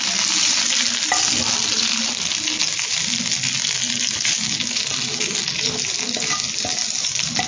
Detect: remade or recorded recorded